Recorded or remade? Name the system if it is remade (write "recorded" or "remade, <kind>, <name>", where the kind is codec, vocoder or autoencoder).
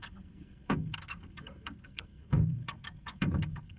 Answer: remade, codec, SNAC